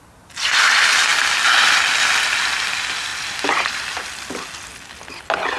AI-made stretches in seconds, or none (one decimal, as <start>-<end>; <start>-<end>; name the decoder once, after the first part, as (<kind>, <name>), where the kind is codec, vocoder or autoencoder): none